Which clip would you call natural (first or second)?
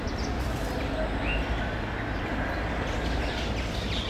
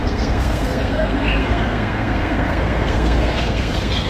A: first